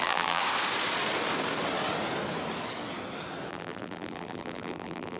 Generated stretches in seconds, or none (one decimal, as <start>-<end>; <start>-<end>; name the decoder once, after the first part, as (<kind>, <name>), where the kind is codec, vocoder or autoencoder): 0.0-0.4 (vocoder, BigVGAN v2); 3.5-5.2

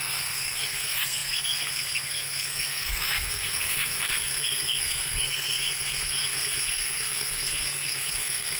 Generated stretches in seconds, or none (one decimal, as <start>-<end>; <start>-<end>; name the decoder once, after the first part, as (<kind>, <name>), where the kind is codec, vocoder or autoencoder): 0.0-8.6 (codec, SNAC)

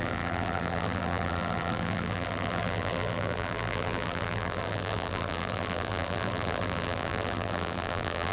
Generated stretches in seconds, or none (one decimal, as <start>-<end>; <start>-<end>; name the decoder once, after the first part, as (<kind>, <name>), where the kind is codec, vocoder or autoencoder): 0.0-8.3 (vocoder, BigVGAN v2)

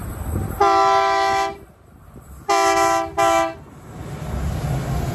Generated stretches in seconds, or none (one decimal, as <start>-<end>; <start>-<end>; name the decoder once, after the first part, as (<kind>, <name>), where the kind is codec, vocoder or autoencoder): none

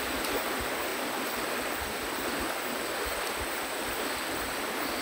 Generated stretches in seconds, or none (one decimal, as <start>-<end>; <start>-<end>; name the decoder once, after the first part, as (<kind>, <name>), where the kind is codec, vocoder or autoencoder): none

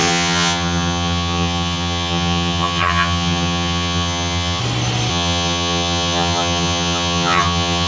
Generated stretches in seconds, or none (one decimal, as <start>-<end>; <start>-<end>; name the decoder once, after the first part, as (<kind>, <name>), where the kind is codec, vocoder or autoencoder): 0.0-4.6 (vocoder, HiFi-GAN); 5.1-7.9

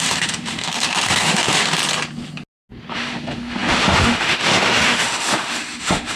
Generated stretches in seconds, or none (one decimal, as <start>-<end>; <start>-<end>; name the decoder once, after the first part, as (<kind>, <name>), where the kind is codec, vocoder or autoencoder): 0.0-1.8 (autoencoder, DAC-VAE); 2.9-6.2

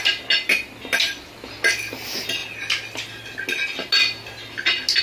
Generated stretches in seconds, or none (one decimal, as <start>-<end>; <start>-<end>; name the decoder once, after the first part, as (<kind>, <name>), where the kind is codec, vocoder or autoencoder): none